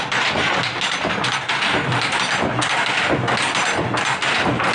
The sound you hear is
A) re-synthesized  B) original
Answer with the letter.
B